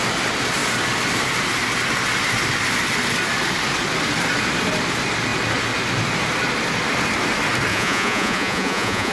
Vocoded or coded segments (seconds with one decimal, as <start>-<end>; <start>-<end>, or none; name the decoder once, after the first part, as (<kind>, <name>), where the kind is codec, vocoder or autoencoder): 7.7-9.1 (vocoder, Vocos)